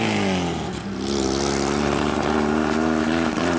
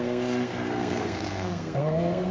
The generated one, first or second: second